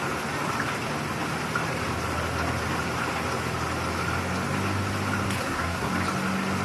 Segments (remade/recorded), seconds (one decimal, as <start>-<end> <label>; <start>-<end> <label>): 0.0-5.4 recorded; 5.4-5.9 remade; 5.9-6.6 recorded